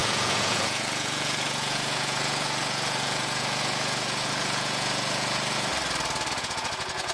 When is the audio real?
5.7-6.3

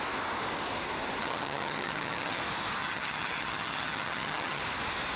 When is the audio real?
0.0-1.2; 2.4-2.8; 4.6-5.2

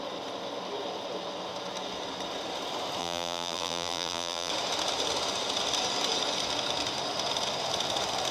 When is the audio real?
0.0-3.0; 4.5-8.3